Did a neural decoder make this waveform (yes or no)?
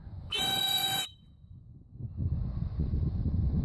yes